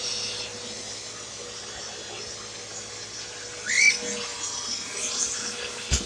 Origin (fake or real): real